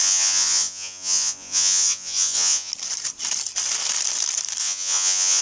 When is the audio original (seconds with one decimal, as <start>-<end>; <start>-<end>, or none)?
2.7-4.6